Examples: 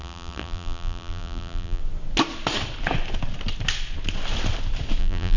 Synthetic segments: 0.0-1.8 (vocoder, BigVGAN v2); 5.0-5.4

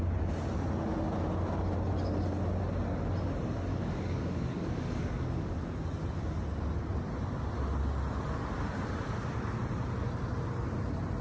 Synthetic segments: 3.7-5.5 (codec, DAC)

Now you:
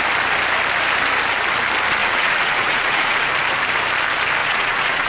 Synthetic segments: 2.0-3.3 (vocoder, Vocos); 4.4-5.1

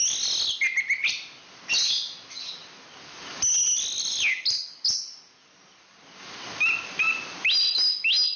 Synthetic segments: none

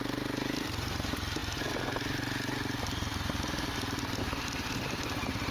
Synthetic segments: none

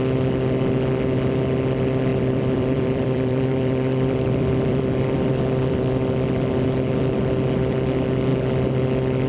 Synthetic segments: 2.1-5.9 (vocoder, BigVGAN v2)

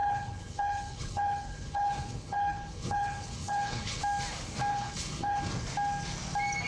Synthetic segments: 0.0-4.0 (codec, HILCodec); 4.7-5.4

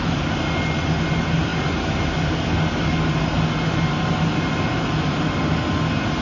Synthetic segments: none